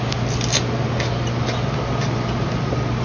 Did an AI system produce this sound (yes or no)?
no